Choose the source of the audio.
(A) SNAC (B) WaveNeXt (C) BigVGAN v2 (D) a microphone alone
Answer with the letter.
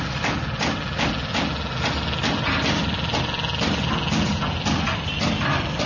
D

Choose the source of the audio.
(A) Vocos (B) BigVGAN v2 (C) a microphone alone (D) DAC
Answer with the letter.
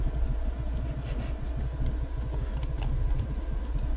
C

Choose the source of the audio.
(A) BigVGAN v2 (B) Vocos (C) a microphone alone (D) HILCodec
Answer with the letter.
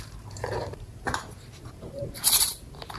A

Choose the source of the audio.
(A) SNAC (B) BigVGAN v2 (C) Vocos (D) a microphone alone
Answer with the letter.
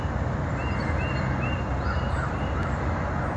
D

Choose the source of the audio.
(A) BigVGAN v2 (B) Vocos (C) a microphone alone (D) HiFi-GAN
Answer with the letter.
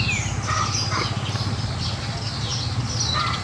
C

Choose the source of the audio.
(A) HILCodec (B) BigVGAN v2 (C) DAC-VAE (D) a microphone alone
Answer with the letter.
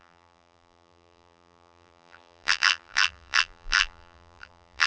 B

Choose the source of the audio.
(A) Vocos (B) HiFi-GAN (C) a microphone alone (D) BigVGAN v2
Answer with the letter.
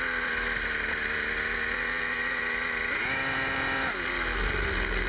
C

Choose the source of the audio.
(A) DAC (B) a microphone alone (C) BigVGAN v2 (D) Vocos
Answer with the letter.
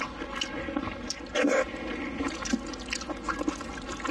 B